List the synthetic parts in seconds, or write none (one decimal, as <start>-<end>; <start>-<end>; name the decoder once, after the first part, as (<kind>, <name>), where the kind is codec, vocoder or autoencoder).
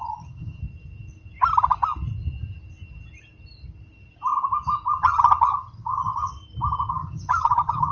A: 0.0-0.6 (vocoder, HiFi-GAN); 4.9-6.3; 6.9-7.9